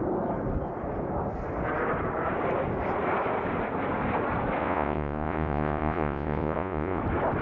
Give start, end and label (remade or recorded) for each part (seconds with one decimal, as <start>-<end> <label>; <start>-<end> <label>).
0.0-4.6 recorded; 4.6-7.0 remade; 7.0-7.4 recorded